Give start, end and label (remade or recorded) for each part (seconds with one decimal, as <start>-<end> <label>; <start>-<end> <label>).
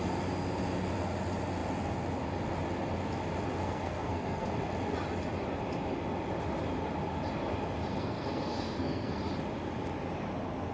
0.0-3.6 recorded; 3.6-4.5 remade; 4.5-7.9 recorded; 7.9-9.2 remade; 9.2-10.7 recorded